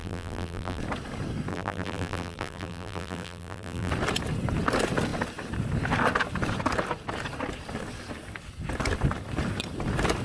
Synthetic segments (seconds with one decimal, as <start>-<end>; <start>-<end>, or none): 0.0-0.8; 1.5-3.9